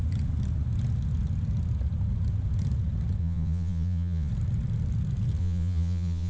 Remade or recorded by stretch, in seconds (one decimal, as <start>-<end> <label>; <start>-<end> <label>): 0.0-3.2 recorded; 3.2-4.3 remade; 4.3-5.4 recorded; 5.4-6.3 remade